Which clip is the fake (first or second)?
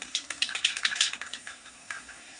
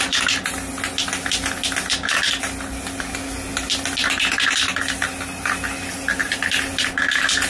first